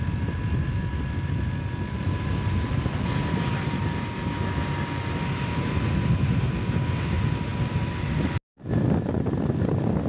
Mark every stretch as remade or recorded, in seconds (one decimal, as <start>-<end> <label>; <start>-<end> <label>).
0.0-10.1 recorded